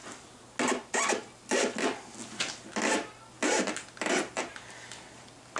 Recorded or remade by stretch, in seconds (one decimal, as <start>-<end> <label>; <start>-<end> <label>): 0.0-5.6 recorded